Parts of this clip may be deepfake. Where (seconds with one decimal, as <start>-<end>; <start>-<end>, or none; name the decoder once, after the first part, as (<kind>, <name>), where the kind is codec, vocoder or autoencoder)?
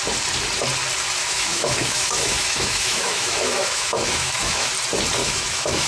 1.2-4.7 (autoencoder, DAC-VAE); 5.2-5.9